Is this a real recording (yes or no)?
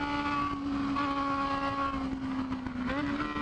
yes